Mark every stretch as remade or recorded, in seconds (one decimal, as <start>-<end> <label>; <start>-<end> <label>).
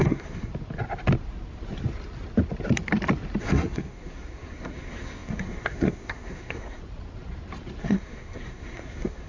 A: 0.0-0.5 remade; 0.5-3.4 recorded; 3.4-6.8 remade; 6.8-7.8 recorded; 7.8-9.3 remade